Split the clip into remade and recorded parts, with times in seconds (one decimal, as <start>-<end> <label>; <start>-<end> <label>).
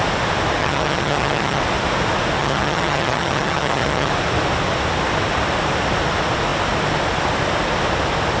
0.0-0.6 recorded; 0.6-1.6 remade; 1.6-2.4 recorded; 2.4-4.1 remade; 4.1-8.4 recorded